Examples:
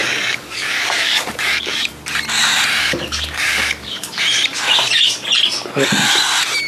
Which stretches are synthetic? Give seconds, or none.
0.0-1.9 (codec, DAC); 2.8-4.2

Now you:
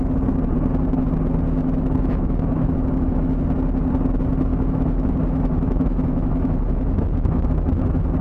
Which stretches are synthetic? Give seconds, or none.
1.6-3.3 (autoencoder, DAC-VAE); 4.5-7.5

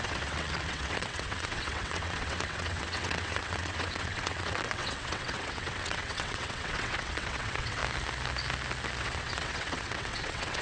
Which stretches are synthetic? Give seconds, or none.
0.0-7.8 (vocoder, WaveNeXt); 9.0-10.6

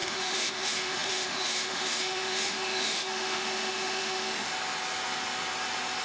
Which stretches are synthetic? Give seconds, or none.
0.0-4.5 (autoencoder, DAC-VAE)

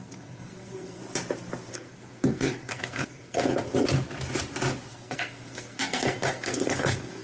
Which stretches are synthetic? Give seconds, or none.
0.0-1.0 (codec, SNAC); 1.7-3.5; 4.9-7.2